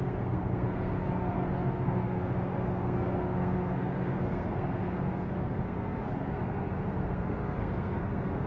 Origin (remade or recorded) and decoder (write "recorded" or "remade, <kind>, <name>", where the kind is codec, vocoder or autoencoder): remade, codec, SNAC